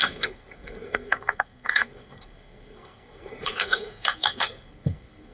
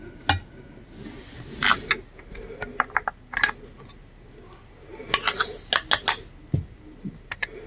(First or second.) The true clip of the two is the second